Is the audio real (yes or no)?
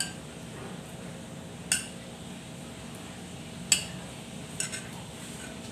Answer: yes